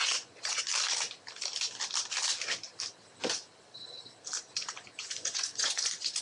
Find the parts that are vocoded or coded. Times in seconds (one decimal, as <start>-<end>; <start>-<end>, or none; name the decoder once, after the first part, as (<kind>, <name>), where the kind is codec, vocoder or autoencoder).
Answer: 0.0-0.7 (vocoder, Vocos); 4.4-6.2